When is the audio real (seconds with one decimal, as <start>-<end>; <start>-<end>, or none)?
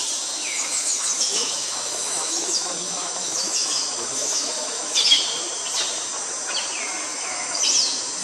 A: 0.0-0.4; 5.2-7.1; 7.6-8.2